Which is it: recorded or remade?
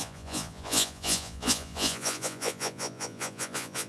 remade